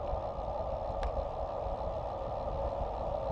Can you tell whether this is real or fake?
real